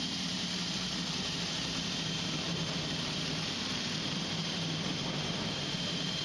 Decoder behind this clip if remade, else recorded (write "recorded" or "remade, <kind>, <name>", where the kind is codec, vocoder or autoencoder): remade, vocoder, BigVGAN v2